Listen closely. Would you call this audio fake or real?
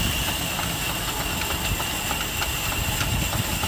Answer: fake